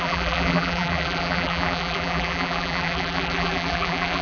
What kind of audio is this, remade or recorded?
remade